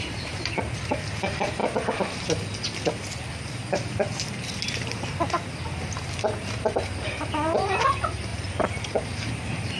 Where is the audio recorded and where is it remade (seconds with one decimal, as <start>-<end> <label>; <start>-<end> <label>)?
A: 0.0-1.6 remade; 1.6-6.7 recorded; 6.7-9.8 remade

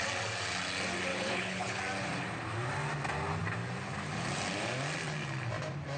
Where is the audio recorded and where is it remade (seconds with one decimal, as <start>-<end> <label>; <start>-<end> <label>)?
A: 0.0-1.1 recorded; 1.1-1.8 remade; 1.8-6.0 recorded

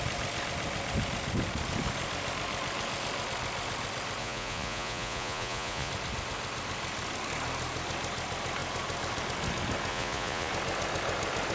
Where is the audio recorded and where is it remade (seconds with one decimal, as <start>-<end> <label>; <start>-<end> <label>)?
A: 0.0-4.2 recorded; 4.2-5.9 remade; 5.9-9.9 recorded; 9.9-10.5 remade; 10.5-11.5 recorded

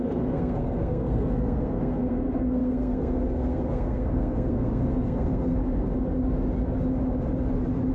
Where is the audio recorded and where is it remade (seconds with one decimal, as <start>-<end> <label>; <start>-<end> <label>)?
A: 0.0-5.6 remade; 5.6-7.9 recorded

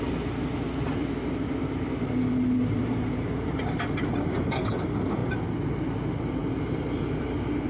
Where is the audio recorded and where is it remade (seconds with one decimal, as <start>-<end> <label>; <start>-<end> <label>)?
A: 0.0-2.8 recorded; 2.8-4.4 remade; 4.4-5.2 recorded; 5.2-5.8 remade; 5.8-6.4 recorded; 6.4-7.2 remade; 7.2-7.7 recorded

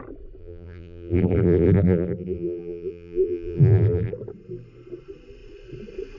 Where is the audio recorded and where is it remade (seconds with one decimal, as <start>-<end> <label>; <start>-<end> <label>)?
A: 0.0-0.4 recorded; 0.4-4.1 remade; 4.1-6.2 recorded

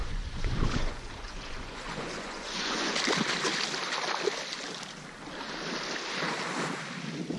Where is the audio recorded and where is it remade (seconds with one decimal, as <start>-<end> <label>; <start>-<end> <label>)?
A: 0.0-3.0 remade; 3.0-7.4 recorded